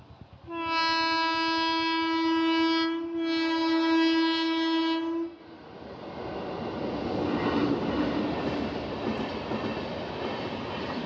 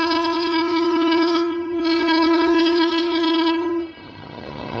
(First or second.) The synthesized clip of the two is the second